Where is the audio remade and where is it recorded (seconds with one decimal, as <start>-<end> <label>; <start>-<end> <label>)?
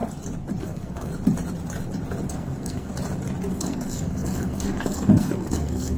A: 0.0-0.6 recorded; 0.6-1.1 remade; 1.1-2.3 recorded; 2.3-2.9 remade; 2.9-3.5 recorded; 3.5-6.0 remade